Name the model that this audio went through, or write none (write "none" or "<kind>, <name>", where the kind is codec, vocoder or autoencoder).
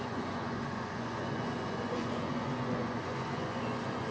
vocoder, Vocos